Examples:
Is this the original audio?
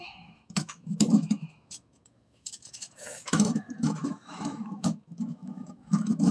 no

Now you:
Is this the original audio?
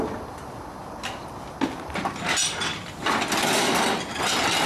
yes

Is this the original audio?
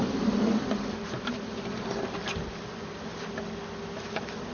yes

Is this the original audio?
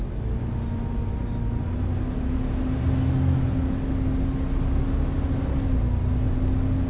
yes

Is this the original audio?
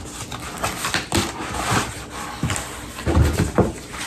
yes